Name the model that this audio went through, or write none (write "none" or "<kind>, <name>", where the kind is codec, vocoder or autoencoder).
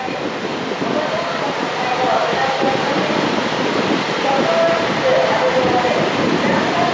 none